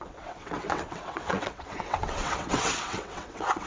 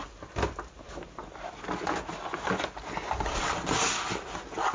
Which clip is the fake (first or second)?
first